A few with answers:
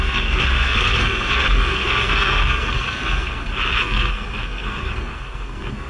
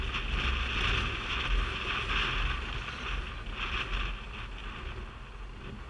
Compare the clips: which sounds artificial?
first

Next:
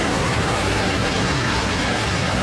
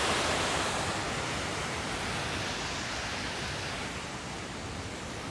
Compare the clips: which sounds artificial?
first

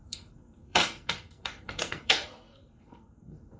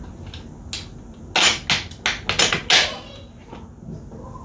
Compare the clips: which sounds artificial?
first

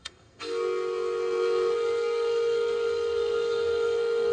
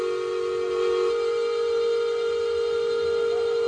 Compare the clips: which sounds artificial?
first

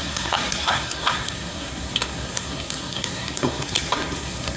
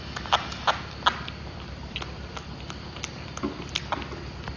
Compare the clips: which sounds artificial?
first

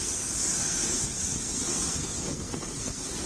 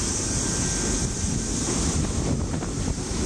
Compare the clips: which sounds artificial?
first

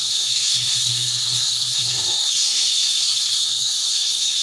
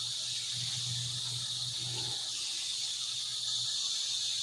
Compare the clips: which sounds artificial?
first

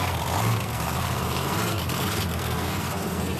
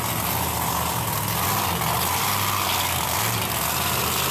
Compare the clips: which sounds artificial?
first